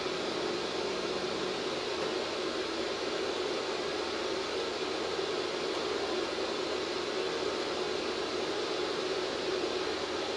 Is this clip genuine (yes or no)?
yes